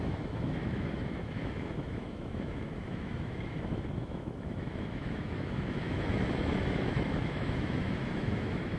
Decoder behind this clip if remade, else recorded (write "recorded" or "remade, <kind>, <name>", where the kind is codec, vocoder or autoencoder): remade, autoencoder, DAC-VAE